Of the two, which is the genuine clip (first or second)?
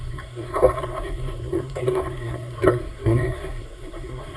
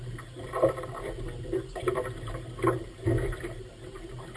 second